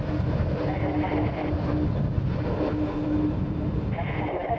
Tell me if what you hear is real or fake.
real